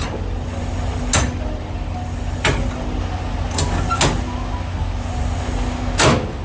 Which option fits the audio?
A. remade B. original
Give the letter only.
B